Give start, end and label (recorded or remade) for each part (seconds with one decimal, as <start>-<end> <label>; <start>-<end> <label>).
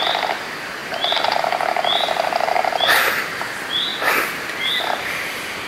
0.0-5.7 recorded